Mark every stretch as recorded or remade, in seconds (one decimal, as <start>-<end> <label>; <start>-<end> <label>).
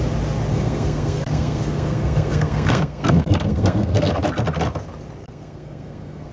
0.0-0.5 recorded; 0.5-4.1 remade; 4.1-5.2 recorded; 5.2-6.3 remade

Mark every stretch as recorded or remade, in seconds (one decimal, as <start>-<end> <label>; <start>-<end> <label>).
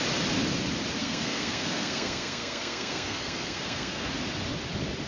0.0-1.0 recorded; 1.0-4.1 remade; 4.1-5.1 recorded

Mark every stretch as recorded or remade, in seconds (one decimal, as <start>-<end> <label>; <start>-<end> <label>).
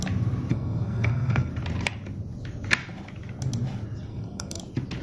0.0-0.5 recorded; 0.5-1.5 remade; 1.5-4.1 recorded; 4.1-4.6 remade; 4.6-5.0 recorded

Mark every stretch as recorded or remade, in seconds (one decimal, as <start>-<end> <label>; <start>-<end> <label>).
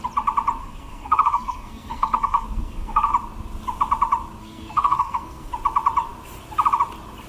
0.0-0.6 recorded; 0.6-3.1 remade; 3.1-4.4 recorded; 4.4-5.5 remade; 5.5-7.3 recorded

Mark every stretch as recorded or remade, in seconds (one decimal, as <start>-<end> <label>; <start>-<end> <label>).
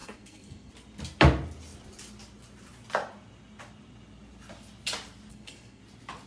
0.0-0.7 remade; 0.7-5.3 recorded; 5.3-5.8 remade; 5.8-6.3 recorded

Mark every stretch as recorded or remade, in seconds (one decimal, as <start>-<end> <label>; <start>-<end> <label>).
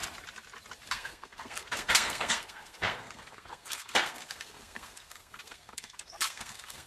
0.0-0.9 recorded; 0.9-6.9 remade